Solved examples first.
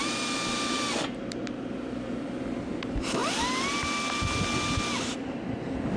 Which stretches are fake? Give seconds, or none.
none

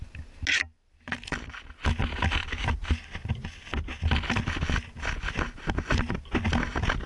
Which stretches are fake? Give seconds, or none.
2.4-3.2 (vocoder, BigVGAN v2)

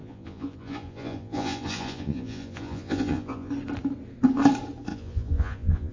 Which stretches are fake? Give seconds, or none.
0.0-3.5 (vocoder, Vocos); 4.9-5.9

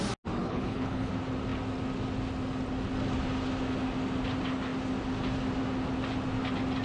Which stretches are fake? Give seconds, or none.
0.4-1.1 (codec, HILCodec)

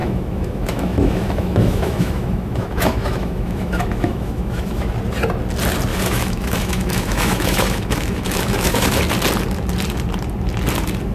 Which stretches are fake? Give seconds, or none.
0.0-4.9 (autoencoder, DAC-VAE); 5.9-9.0

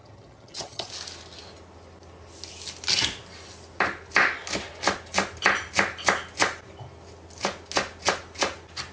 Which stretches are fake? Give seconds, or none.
0.0-0.9 (vocoder, HiFi-GAN)

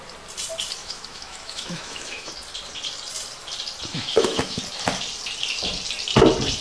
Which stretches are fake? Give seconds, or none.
0.8-2.3 (autoencoder, DAC-VAE); 3.9-4.6

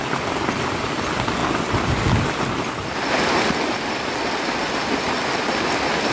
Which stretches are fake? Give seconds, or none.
none